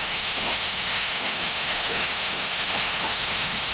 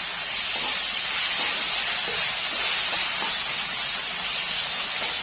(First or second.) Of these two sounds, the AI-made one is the first